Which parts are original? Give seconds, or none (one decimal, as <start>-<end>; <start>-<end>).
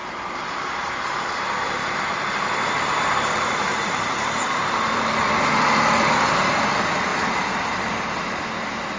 5.3-9.0